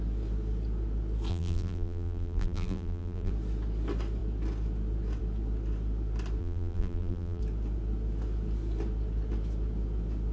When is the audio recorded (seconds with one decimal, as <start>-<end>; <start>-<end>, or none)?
0.0-1.3; 3.3-6.4; 7.4-10.3